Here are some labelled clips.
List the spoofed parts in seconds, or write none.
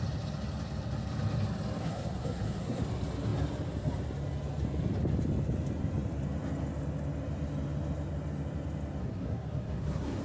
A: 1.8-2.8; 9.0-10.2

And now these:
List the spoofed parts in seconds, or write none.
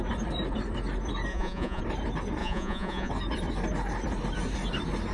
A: 1.3-1.8; 2.4-3.1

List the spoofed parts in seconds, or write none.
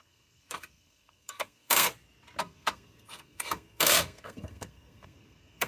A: 0.0-1.9; 2.4-5.7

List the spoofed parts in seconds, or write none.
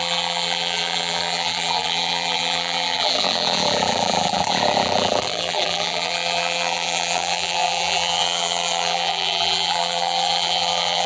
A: 0.0-11.1